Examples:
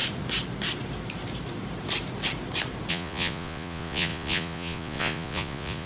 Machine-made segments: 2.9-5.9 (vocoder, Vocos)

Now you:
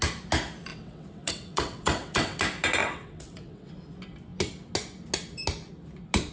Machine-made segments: 0.7-2.4 (vocoder, WaveNeXt); 2.8-3.7

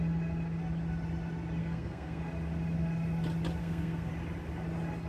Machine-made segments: 1.6-2.2 (codec, SNAC); 3.6-4.1

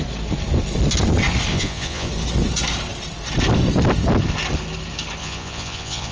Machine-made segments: 1.5-2.1 (vocoder, Vocos); 5.2-6.1

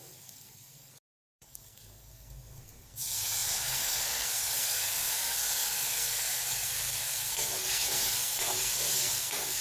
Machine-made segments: 0.0-9.6 (codec, SNAC)